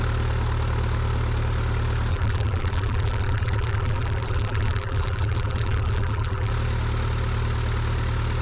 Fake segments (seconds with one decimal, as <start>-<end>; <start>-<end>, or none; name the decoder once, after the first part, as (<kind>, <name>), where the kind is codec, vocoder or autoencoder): 2.1-6.5 (vocoder, BigVGAN v2)